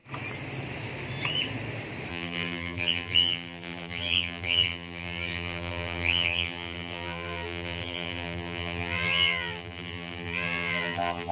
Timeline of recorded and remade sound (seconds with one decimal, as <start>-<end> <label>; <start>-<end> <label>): 0.0-2.1 recorded; 2.1-11.3 remade